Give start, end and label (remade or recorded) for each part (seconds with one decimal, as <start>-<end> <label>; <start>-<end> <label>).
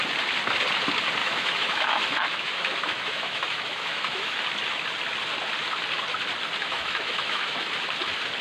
0.0-1.2 recorded; 1.2-4.4 remade; 4.4-6.6 recorded; 6.6-7.7 remade; 7.7-8.4 recorded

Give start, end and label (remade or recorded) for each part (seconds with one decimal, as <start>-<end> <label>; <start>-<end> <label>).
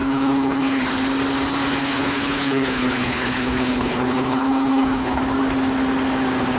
0.0-0.8 remade; 0.8-1.8 recorded; 1.8-5.2 remade; 5.2-6.6 recorded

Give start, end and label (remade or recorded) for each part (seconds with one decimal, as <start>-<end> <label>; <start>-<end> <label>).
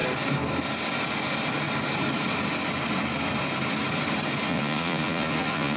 0.0-4.5 recorded; 4.5-5.8 remade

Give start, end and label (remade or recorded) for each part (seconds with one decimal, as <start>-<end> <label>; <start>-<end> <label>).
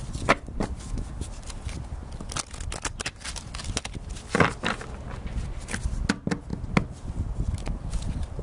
0.0-8.4 recorded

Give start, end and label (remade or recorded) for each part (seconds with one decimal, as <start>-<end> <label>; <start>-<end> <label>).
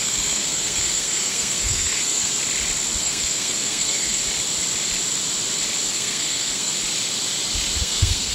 0.0-2.3 remade; 2.3-3.0 recorded; 3.0-4.2 remade; 4.2-5.9 recorded; 5.9-6.7 remade; 6.7-7.8 recorded; 7.8-8.3 remade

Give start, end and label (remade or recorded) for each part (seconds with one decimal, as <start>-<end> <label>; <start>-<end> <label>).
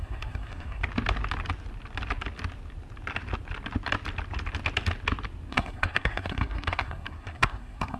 0.0-0.8 remade; 0.8-5.5 recorded; 5.5-8.0 remade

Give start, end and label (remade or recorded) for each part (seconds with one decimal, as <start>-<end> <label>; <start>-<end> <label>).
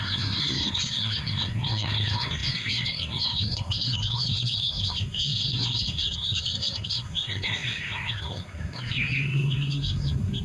0.0-10.4 remade